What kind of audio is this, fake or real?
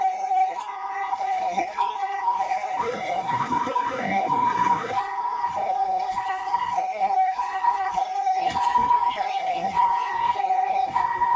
fake